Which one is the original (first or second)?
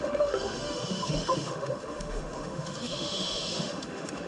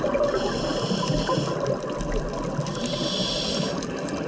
second